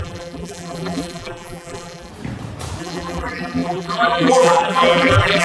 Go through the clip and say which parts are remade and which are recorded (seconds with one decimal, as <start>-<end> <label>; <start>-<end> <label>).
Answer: 0.0-2.1 remade; 2.1-2.8 recorded; 2.8-5.4 remade